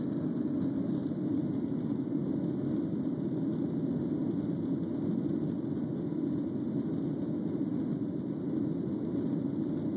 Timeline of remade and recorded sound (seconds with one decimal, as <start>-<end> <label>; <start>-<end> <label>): 0.0-10.0 recorded

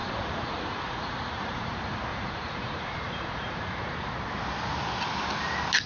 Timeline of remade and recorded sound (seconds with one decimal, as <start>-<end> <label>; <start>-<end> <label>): 0.0-1.7 remade; 1.7-2.1 recorded; 2.1-4.1 remade; 4.1-5.9 recorded

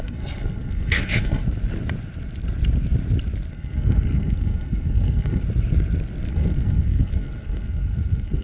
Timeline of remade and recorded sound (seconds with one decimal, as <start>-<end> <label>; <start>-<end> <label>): 0.0-1.4 remade; 1.4-3.5 recorded; 3.5-5.4 remade; 5.4-6.3 recorded; 6.3-8.4 remade

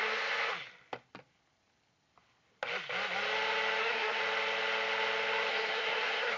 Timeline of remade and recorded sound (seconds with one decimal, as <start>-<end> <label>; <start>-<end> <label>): 0.0-3.8 recorded; 3.8-4.2 remade; 4.2-5.5 recorded; 5.5-6.4 remade